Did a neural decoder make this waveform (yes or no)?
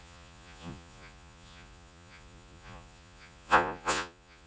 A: yes